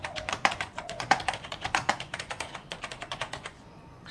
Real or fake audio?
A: fake